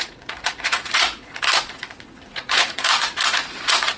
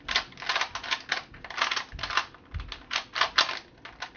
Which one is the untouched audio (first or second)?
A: second